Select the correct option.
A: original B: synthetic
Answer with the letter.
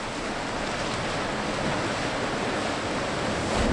A